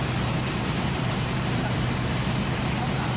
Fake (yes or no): yes